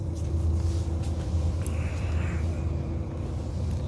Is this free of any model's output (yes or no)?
yes